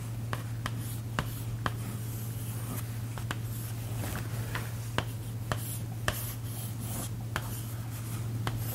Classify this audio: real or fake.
real